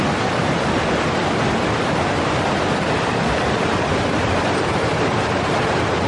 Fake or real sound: real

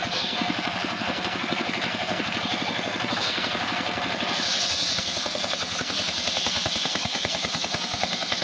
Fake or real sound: fake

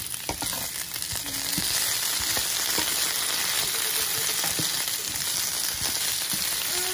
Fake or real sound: real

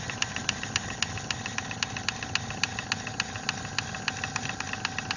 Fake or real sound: real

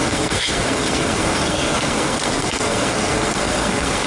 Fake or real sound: fake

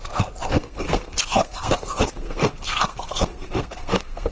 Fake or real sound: fake